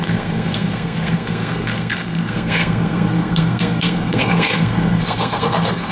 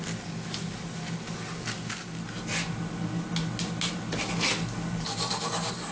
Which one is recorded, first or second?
second